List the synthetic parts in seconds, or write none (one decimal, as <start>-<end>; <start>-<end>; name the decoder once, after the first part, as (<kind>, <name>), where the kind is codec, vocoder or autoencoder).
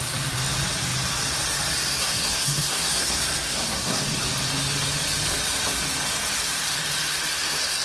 2.0-4.0 (codec, SNAC)